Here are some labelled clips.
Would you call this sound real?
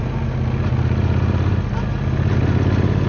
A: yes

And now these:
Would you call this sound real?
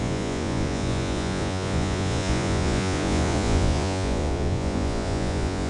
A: no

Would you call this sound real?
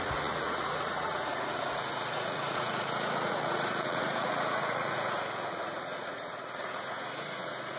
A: no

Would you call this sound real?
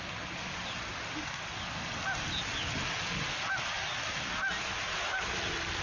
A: yes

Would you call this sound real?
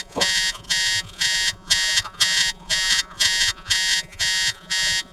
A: no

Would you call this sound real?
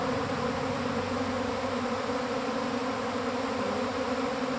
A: yes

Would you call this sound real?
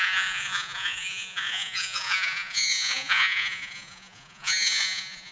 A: no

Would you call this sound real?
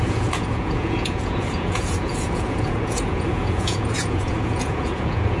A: no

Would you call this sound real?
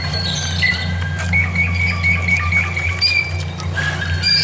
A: yes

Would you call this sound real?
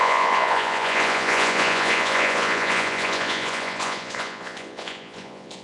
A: no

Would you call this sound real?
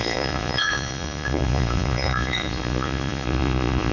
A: no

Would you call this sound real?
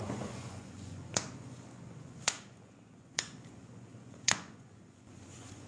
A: no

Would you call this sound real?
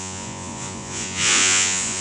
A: no